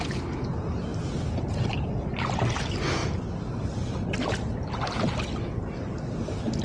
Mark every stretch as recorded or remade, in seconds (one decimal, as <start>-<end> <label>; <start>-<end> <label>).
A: 0.0-0.9 recorded; 0.9-2.0 remade; 2.0-3.0 recorded; 3.0-4.6 remade; 4.6-6.6 recorded